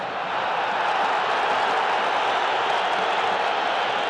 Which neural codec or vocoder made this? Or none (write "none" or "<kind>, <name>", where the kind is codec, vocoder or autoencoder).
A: none